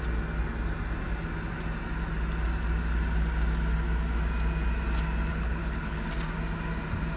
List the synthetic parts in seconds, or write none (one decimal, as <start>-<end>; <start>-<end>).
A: 5.3-6.0